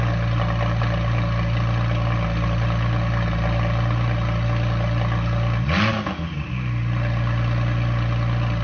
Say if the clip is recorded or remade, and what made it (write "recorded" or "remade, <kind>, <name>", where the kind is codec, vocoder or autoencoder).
recorded